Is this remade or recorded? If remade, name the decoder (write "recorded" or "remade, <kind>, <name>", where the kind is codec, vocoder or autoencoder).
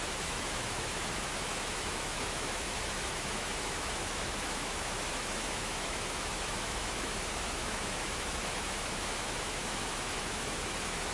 remade, autoencoder, DAC-VAE